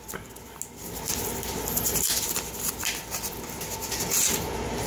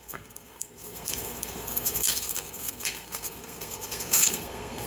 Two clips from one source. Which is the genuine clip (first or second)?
first